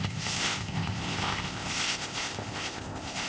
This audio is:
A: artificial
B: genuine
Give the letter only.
A